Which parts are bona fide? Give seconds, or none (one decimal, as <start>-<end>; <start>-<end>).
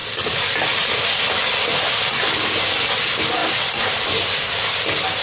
0.0-5.2